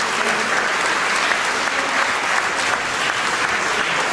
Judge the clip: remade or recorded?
recorded